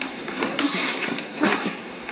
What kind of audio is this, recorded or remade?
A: remade